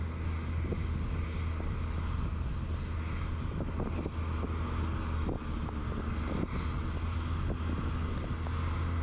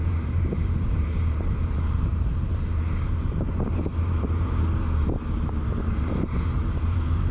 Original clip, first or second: first